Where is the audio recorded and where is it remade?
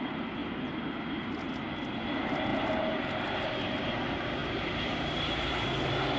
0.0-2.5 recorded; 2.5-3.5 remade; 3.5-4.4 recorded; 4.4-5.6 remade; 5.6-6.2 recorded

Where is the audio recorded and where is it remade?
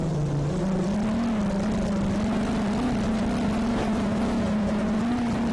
0.0-3.7 recorded; 3.7-5.0 remade; 5.0-5.5 recorded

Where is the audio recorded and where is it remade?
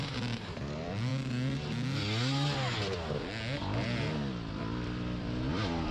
0.0-1.1 remade; 1.1-4.6 recorded; 4.6-5.9 remade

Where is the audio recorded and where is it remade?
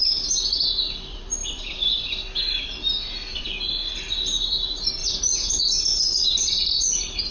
0.0-1.4 recorded; 1.4-3.5 remade; 3.5-5.0 recorded; 5.0-5.6 remade; 5.6-7.3 recorded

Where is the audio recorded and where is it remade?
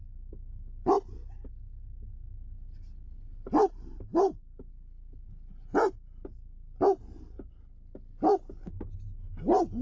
0.0-3.3 recorded; 3.3-4.7 remade; 4.7-9.8 recorded